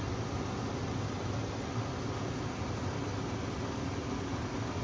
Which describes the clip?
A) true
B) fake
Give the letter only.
A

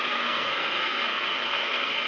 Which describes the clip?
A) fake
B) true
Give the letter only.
A